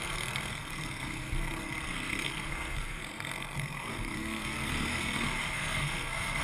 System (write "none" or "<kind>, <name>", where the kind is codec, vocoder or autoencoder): codec, SNAC